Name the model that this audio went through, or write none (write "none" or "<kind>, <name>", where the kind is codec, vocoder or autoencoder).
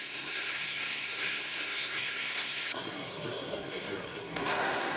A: codec, SNAC